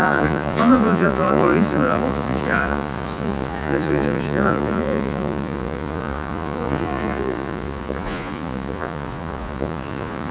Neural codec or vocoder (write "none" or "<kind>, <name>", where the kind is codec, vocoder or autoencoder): vocoder, Vocos